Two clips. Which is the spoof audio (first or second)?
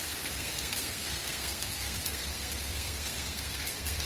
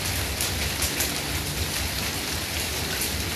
first